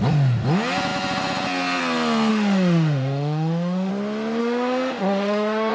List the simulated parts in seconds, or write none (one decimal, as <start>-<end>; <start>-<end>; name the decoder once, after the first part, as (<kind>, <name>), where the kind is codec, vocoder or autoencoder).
2.3-3.9 (autoencoder, DAC-VAE); 4.4-5.7